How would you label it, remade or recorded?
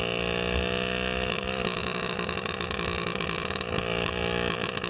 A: remade